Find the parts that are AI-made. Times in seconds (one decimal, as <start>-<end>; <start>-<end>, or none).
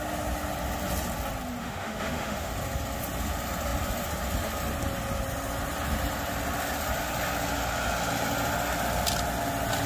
1.6-2.5